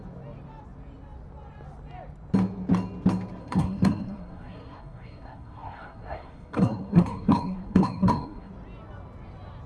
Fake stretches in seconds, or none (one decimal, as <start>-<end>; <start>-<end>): 3.4-8.5